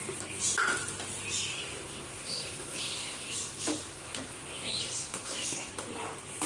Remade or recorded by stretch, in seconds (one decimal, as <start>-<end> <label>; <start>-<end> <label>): 0.0-1.5 recorded; 1.5-3.3 remade; 3.3-3.9 recorded; 3.9-5.7 remade; 5.7-6.5 recorded